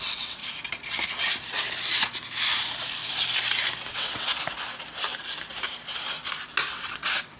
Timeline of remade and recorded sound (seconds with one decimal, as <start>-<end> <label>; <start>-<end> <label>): 0.0-0.4 remade; 0.4-3.9 recorded; 3.9-4.3 remade; 4.3-6.7 recorded; 6.7-7.4 remade